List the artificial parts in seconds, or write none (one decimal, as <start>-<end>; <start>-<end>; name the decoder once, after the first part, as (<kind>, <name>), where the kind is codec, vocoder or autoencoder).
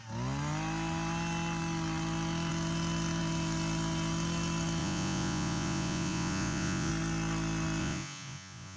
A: 4.8-6.9 (vocoder, Vocos); 7.8-8.8